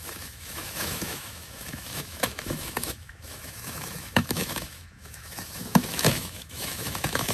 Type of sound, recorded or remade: remade